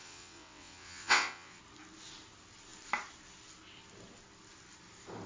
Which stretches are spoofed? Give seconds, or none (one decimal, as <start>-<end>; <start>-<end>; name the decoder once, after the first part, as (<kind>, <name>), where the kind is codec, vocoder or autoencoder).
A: 0.0-1.6 (vocoder, WaveNeXt)